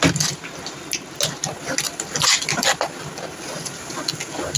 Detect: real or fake real